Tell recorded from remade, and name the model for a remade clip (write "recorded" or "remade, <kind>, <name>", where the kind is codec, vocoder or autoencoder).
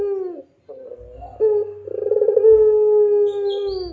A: recorded